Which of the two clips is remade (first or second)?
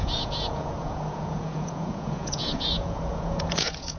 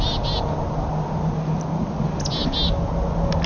first